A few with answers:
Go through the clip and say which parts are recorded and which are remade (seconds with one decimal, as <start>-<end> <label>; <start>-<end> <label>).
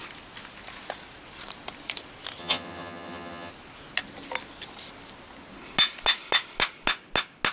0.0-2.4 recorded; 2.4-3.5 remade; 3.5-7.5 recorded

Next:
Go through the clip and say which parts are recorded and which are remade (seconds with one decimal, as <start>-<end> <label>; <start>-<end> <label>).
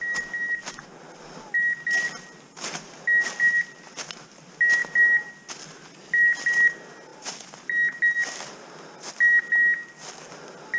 0.0-10.8 recorded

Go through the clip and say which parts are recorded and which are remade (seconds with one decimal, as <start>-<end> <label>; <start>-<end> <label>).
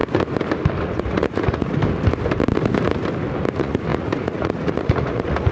0.0-0.8 recorded; 0.8-1.8 remade; 1.8-3.5 recorded; 3.5-5.5 remade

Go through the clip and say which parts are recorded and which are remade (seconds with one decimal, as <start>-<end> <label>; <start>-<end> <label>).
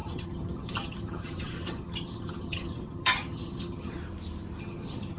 0.0-4.0 remade; 4.0-4.6 recorded; 4.6-5.2 remade